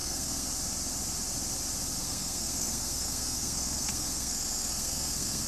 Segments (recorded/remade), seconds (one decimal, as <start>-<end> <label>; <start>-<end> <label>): 0.0-0.5 remade; 0.5-2.0 recorded; 2.0-5.5 remade